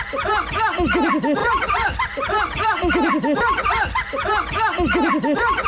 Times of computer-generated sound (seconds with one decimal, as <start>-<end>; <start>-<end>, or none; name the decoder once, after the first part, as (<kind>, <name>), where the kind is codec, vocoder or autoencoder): 1.4-2.9 (vocoder, BigVGAN v2)